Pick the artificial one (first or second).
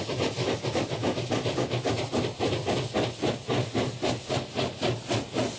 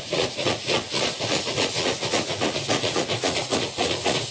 second